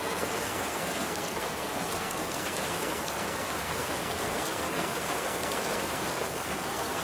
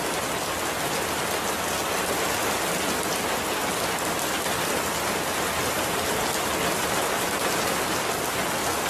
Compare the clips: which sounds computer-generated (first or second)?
first